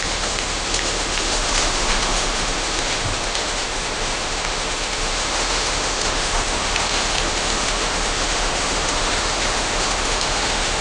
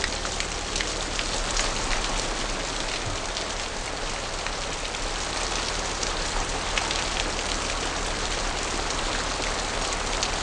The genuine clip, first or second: second